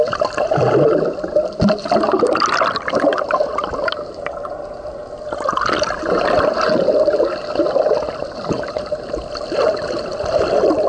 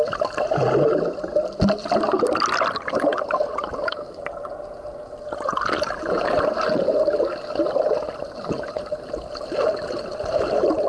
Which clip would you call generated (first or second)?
first